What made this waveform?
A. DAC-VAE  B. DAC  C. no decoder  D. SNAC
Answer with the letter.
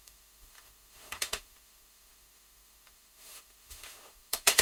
A